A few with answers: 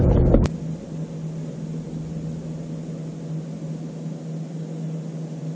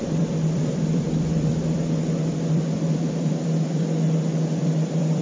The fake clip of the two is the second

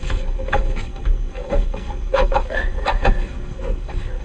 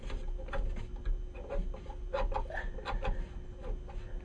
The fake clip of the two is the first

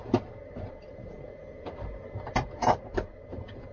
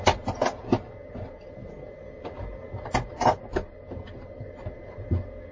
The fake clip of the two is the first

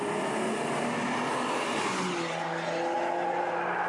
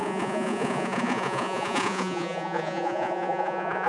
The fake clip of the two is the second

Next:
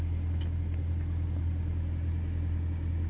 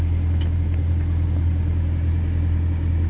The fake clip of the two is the second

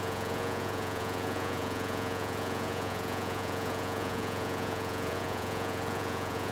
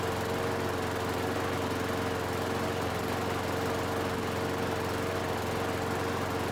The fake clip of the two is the first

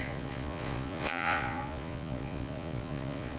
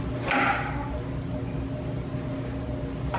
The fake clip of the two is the first